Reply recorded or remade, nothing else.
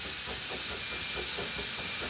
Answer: recorded